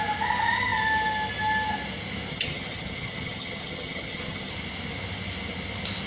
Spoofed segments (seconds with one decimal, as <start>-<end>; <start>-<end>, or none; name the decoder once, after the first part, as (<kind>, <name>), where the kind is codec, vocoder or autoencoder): 2.3-4.5 (vocoder, HiFi-GAN)